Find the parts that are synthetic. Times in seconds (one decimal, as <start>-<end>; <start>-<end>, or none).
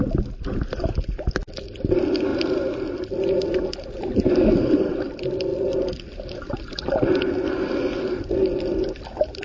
none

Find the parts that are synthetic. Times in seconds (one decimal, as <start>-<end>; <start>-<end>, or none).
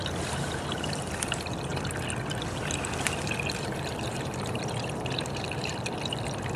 0.0-1.7; 3.6-6.6